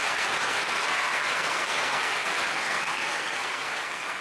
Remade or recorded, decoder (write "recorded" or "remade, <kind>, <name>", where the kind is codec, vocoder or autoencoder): remade, codec, SNAC